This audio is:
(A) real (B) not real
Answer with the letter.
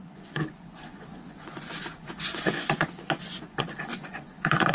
B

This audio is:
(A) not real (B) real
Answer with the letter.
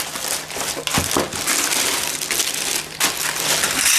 B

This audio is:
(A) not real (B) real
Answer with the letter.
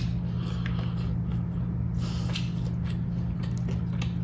B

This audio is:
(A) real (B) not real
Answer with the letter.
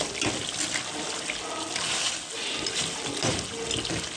A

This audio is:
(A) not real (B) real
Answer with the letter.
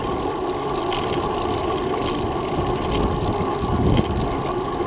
B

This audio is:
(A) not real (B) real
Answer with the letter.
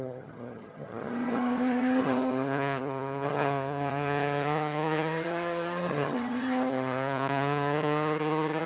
A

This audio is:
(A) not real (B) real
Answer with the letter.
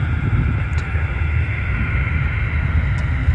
B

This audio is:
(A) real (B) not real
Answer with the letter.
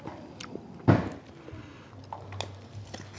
A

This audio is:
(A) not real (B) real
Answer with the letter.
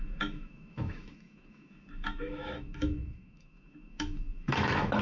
A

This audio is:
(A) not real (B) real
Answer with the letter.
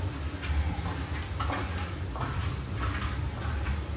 B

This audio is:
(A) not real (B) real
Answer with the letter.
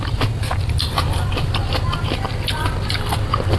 B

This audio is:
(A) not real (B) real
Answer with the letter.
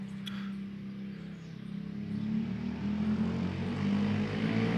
B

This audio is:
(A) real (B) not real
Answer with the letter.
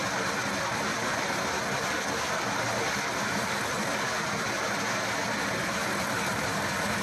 A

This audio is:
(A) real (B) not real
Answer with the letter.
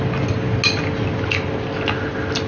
A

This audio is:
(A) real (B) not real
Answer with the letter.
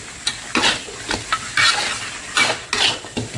A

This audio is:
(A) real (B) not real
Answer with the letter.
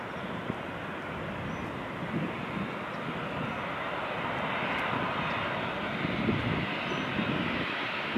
A